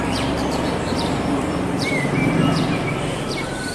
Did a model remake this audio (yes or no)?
yes